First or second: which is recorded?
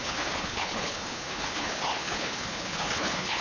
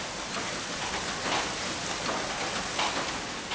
second